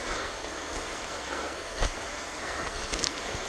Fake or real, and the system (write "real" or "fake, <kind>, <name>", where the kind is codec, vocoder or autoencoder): fake, codec, SNAC